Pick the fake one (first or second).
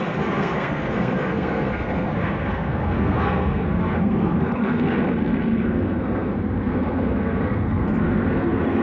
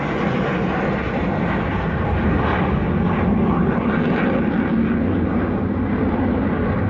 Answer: first